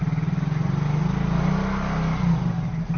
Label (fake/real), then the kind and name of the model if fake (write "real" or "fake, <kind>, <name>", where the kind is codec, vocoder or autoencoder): real